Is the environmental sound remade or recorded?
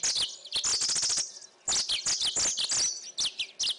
recorded